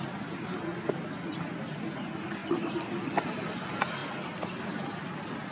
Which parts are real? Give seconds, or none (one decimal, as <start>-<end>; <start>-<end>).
0.0-2.4; 2.9-5.5